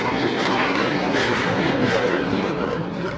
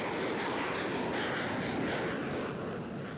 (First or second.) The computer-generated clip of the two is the first